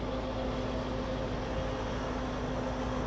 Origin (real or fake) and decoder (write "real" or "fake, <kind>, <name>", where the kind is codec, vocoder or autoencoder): real